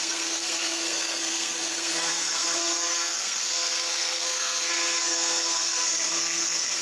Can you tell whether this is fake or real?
fake